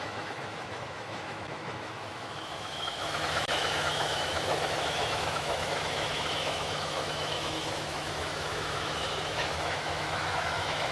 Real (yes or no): no